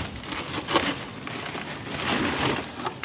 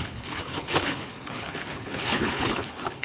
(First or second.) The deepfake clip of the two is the second